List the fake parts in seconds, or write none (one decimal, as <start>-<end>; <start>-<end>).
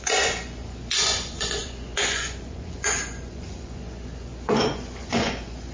0.0-5.7